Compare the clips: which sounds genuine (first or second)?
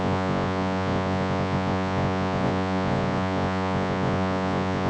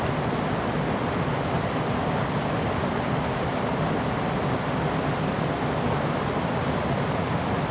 second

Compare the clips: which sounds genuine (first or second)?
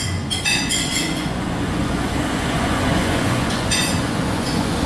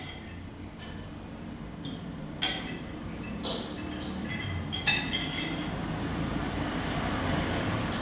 second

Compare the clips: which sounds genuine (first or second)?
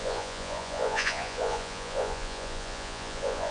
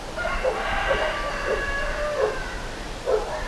second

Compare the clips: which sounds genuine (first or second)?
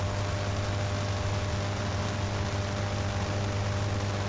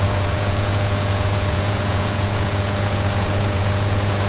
first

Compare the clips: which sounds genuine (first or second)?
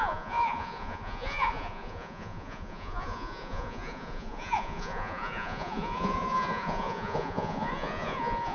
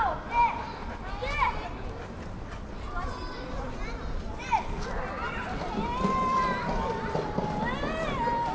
second